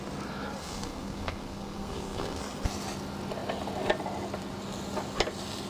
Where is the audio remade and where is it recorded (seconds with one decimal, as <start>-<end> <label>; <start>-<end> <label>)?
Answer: 0.0-0.6 recorded; 0.6-2.4 remade; 2.4-5.7 recorded